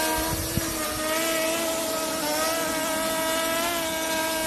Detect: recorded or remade recorded